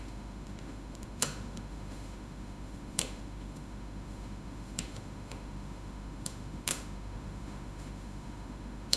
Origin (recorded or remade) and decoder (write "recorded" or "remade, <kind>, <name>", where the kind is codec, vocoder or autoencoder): remade, autoencoder, DAC-VAE